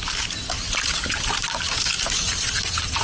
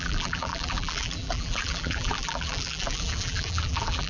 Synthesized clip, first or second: second